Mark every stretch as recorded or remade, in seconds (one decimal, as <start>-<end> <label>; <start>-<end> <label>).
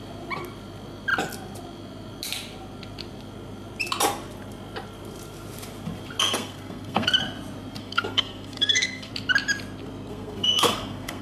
0.0-6.2 recorded; 6.2-7.1 remade; 7.1-7.8 recorded; 7.8-9.1 remade; 9.1-10.1 recorded; 10.1-11.2 remade